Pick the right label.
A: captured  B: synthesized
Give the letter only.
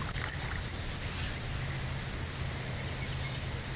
A